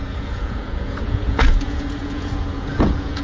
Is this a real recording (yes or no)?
no